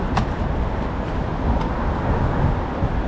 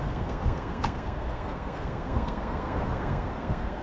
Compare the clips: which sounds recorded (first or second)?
first